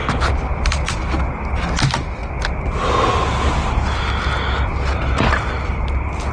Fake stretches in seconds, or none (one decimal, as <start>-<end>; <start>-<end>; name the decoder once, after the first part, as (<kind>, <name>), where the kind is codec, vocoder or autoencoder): none